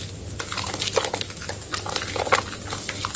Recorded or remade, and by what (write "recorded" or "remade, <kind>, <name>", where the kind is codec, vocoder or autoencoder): recorded